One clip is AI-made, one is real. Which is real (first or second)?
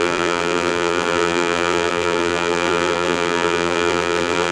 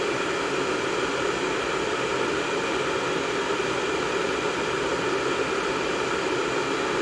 second